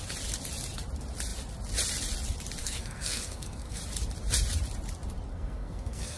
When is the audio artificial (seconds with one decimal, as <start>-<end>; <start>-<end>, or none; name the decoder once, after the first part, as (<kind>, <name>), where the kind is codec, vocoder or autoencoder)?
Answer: 2.6-3.8 (codec, SNAC); 5.3-6.2